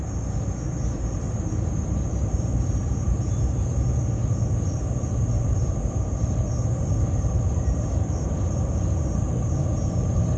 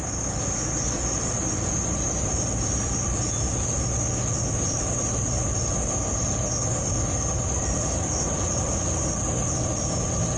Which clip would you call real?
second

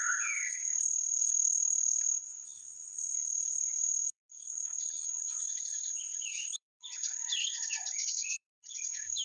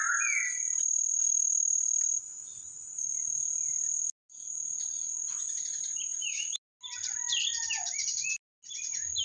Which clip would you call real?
second